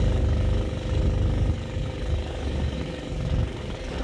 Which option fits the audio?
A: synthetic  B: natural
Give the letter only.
A